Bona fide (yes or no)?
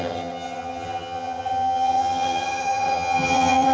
no